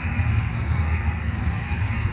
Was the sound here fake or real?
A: fake